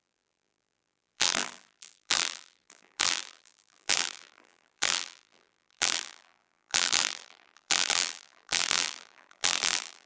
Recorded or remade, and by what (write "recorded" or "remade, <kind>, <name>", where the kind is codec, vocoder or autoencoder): remade, vocoder, BigVGAN v2